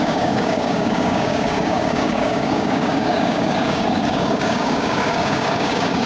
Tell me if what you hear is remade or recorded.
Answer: remade